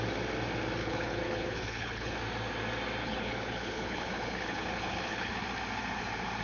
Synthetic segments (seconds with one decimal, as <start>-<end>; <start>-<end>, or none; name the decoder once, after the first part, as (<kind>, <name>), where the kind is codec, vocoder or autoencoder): 0.8-2.2 (codec, HILCodec); 3.0-5.3

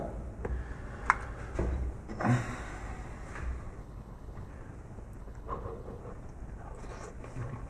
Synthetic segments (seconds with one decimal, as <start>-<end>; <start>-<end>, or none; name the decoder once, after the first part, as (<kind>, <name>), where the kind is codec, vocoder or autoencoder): 3.8-4.5 (codec, HILCodec); 5.2-6.0